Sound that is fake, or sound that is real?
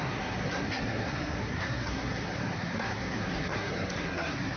fake